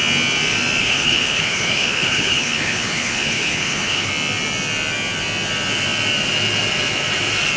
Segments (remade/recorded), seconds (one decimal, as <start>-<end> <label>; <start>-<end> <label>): 0.0-0.8 recorded; 0.8-4.1 remade; 4.1-7.6 recorded